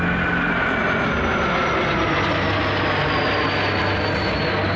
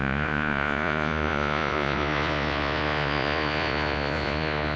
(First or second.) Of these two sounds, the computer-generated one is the second